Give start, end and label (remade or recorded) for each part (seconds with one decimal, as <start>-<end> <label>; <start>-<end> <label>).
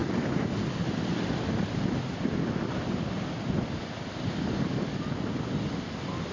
0.0-6.3 recorded